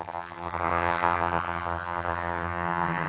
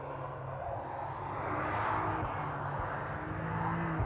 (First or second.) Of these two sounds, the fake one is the first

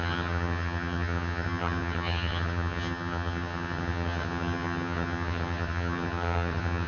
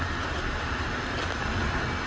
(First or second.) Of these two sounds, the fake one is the first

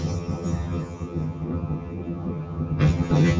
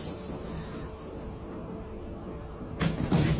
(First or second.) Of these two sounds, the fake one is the first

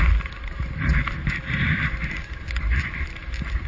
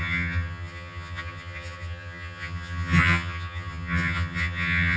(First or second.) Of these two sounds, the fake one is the second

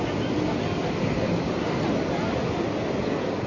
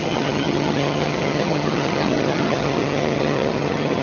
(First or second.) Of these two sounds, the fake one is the second